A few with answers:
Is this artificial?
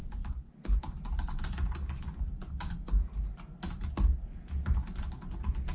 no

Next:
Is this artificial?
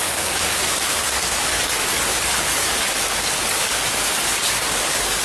yes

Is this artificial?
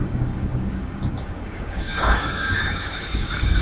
yes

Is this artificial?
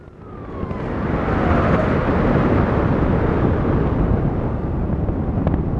no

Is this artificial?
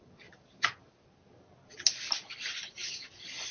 no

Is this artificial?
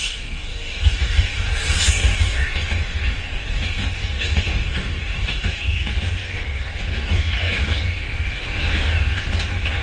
yes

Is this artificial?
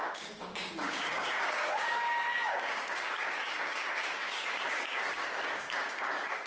yes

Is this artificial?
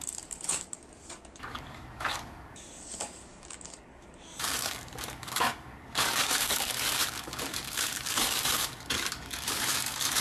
yes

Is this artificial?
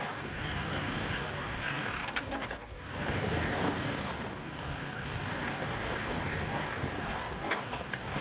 yes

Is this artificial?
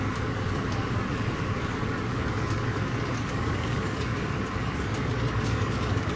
yes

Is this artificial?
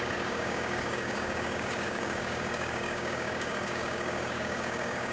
yes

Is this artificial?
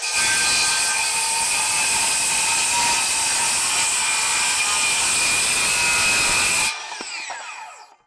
no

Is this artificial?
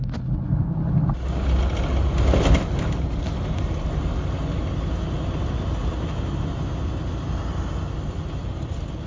no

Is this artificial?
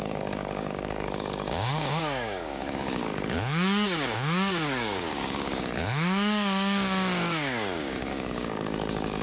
yes